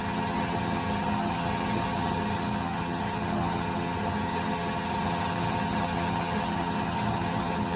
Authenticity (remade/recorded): remade